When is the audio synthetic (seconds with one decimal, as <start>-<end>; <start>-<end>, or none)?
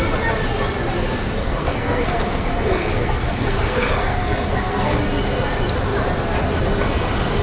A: 1.4-5.0